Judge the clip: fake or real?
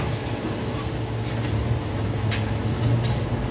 real